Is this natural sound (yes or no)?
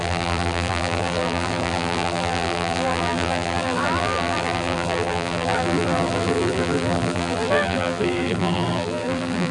no